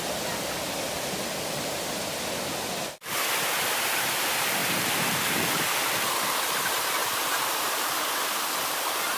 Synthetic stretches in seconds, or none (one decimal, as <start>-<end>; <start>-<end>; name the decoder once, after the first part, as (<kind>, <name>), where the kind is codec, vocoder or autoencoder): 4.6-5.6 (vocoder, BigVGAN v2); 7.0-8.1